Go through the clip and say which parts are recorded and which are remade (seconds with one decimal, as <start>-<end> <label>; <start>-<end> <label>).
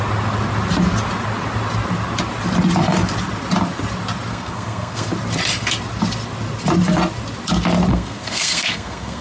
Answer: 0.0-4.3 recorded; 4.3-5.1 remade; 5.1-7.9 recorded; 7.9-9.2 remade